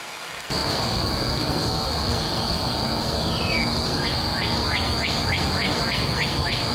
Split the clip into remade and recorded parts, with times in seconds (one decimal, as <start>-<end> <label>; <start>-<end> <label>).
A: 0.0-6.7 remade